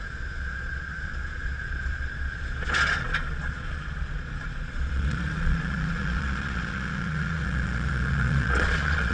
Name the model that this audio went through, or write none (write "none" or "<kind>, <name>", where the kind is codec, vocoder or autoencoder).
vocoder, Vocos